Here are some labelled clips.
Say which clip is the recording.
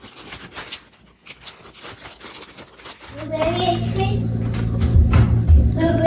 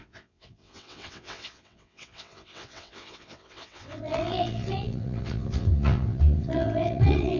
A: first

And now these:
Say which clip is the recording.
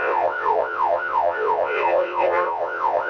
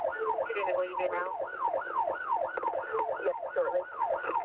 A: second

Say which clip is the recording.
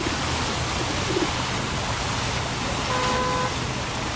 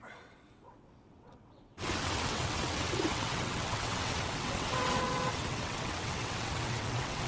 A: first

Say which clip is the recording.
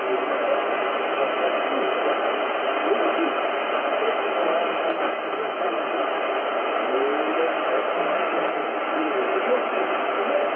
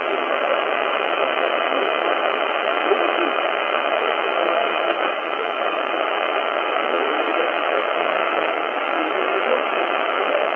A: first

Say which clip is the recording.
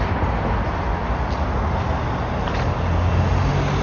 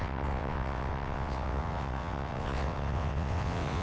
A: first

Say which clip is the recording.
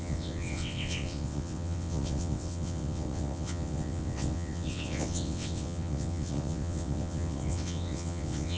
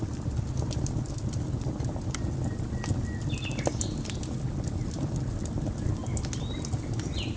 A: second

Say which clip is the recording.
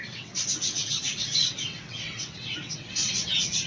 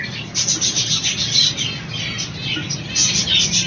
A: second